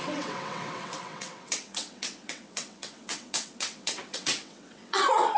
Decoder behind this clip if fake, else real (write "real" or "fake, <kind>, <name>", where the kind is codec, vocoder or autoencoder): fake, vocoder, WaveNeXt